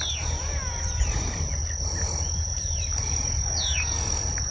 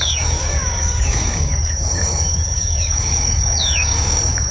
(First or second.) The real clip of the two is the first